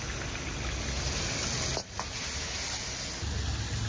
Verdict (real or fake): real